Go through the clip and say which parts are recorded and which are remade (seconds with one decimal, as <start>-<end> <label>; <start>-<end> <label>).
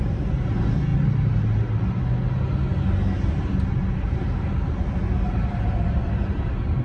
0.0-6.8 recorded